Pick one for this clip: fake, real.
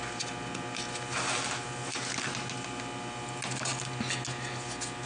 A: real